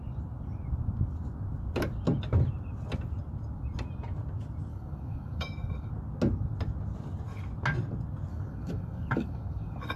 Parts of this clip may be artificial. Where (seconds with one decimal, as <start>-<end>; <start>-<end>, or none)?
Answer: 4.7-5.9; 8.3-10.0